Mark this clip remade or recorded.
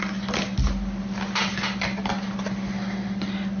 recorded